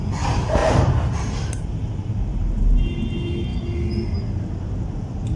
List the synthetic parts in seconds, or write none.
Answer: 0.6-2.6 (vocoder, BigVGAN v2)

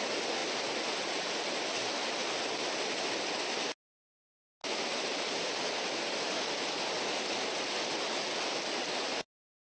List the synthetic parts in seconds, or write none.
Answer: none

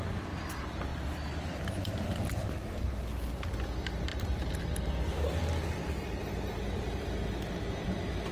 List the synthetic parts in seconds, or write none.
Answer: 0.9-2.6 (vocoder, BigVGAN v2); 4.1-5.4